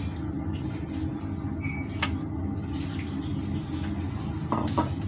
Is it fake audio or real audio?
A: real